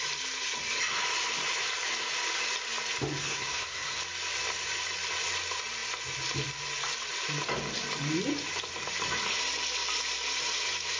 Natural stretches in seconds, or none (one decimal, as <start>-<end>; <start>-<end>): 0.0-3.2; 4.0-11.0